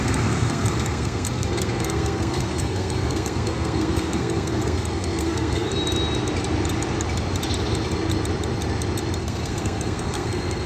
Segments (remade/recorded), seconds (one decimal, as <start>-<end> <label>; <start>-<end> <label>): 0.0-5.7 remade; 5.7-9.2 recorded; 9.2-10.7 remade